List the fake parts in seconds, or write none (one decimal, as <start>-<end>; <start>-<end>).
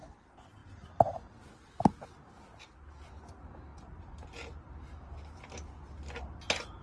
none